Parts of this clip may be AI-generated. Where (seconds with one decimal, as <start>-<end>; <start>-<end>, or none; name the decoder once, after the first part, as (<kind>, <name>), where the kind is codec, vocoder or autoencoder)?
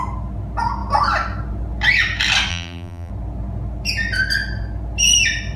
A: 2.5-3.1 (vocoder, BigVGAN v2)